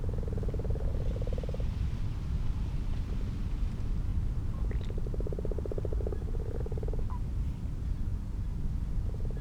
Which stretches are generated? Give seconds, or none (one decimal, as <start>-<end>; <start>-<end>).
none